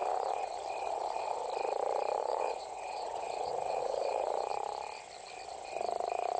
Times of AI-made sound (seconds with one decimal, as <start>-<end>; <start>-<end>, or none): 0.0-0.5; 2.2-4.5